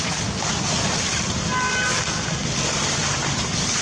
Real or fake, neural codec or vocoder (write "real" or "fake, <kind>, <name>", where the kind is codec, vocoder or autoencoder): fake, vocoder, BigVGAN v2